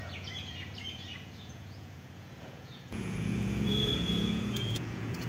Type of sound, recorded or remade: remade